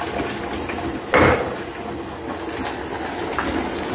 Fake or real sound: real